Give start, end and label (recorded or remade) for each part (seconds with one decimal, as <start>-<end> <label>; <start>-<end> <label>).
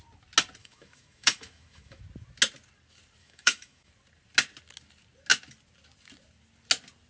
0.0-0.6 recorded; 0.6-2.0 remade; 2.0-3.2 recorded; 3.2-3.9 remade; 3.9-7.1 recorded